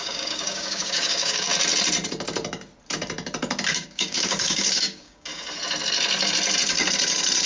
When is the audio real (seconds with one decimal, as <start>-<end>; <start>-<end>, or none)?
1.5-3.7; 5.3-7.5